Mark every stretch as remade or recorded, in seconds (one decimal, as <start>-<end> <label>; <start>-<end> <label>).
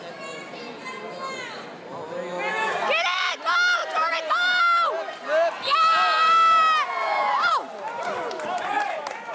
0.0-2.5 recorded; 2.5-3.4 remade; 3.4-3.8 recorded; 3.8-4.6 remade; 4.6-9.3 recorded